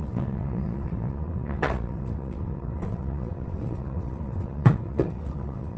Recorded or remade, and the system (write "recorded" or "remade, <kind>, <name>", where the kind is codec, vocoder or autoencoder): remade, vocoder, WaveNeXt